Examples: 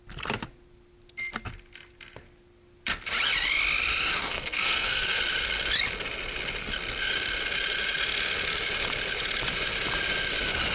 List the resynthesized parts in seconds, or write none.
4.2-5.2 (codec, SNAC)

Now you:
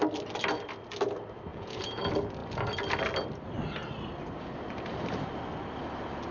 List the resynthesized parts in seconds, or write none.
1.5-2.0 (vocoder, Vocos)